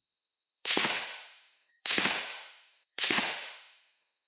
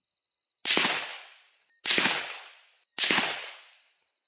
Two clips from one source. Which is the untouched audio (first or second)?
second